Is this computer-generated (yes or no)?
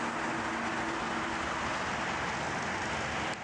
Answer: no